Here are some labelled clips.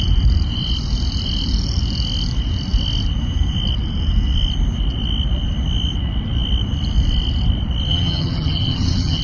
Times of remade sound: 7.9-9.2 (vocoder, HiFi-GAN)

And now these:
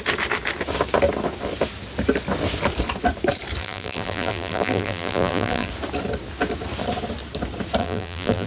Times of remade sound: 3.6-5.7 (vocoder, BigVGAN v2); 7.8-8.5

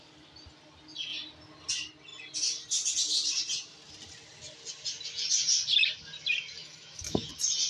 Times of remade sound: 6.6-7.3 (autoencoder, DAC-VAE)

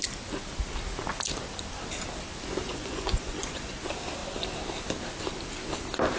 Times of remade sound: 2.7-3.8 (vocoder, Vocos)

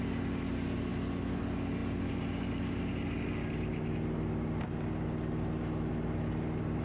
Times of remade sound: none